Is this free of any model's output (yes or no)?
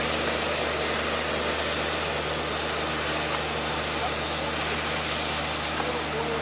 yes